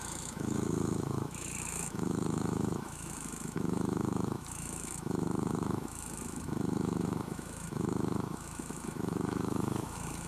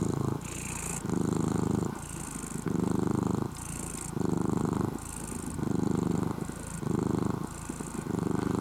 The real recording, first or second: second